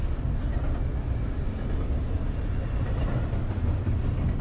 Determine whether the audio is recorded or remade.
recorded